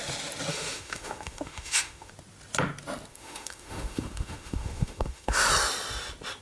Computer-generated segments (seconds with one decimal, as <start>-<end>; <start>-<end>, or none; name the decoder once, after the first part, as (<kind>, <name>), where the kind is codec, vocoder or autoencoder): 0.5-2.1 (autoencoder, DAC-VAE); 3.1-5.5

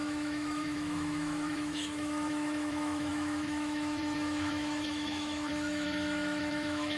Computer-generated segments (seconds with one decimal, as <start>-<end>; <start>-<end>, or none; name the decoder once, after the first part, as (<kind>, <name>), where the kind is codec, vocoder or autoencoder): 0.0-7.0 (autoencoder, DAC-VAE)

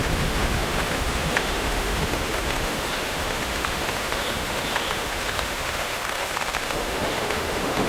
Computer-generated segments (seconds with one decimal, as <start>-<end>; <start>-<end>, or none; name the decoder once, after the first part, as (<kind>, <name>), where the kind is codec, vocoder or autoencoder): 0.0-7.9 (autoencoder, DAC-VAE)